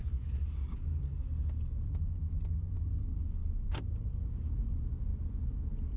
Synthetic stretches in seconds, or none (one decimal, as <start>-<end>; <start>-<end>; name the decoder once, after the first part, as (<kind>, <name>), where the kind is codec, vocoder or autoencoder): 3.4-4.3 (vocoder, BigVGAN v2)